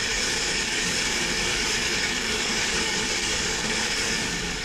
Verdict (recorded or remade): remade